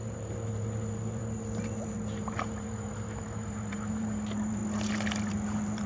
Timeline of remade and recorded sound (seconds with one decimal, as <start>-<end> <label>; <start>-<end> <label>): 0.0-4.6 remade; 4.6-5.3 recorded; 5.3-5.9 remade

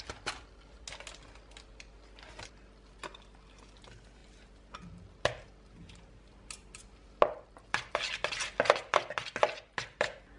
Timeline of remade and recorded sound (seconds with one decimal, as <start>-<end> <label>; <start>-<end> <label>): 0.0-10.4 recorded